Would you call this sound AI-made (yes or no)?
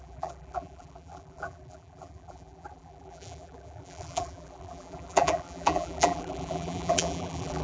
yes